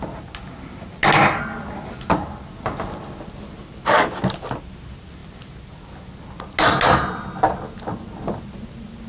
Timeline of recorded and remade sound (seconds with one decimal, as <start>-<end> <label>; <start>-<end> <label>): 0.0-9.1 recorded